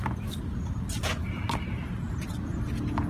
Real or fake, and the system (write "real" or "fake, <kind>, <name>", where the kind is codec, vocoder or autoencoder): real